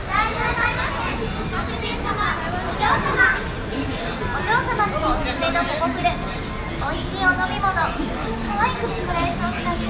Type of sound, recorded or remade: recorded